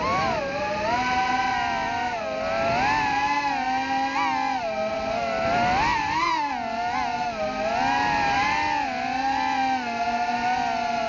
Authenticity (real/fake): real